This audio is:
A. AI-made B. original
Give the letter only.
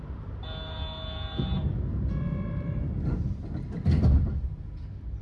B